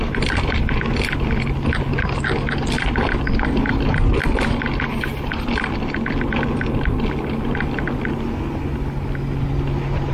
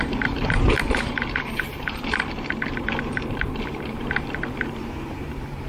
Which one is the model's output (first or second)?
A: second